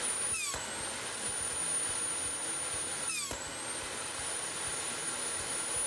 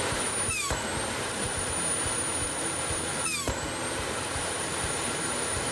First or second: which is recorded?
first